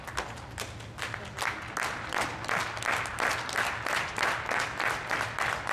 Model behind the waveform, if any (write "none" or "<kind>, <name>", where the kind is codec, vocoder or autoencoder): none